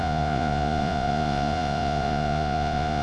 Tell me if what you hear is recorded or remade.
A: remade